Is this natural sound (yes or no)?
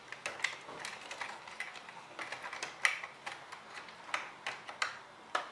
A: yes